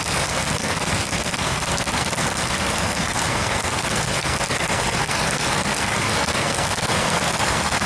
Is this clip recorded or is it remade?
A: remade